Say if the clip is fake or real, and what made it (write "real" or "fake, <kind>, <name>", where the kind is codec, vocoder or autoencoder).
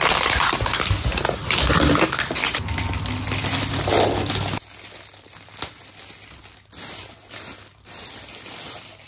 real